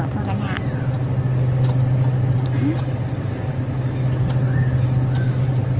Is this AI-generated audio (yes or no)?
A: no